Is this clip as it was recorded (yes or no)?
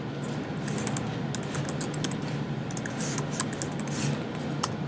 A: yes